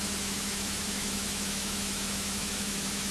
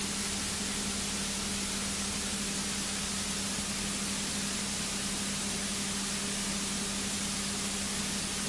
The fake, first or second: first